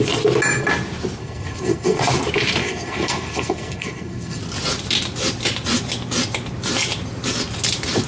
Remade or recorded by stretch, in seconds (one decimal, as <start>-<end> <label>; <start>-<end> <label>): 0.0-1.2 recorded; 1.2-2.0 remade; 2.0-2.6 recorded; 2.6-4.4 remade; 4.4-8.1 recorded